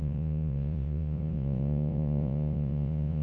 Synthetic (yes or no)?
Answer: yes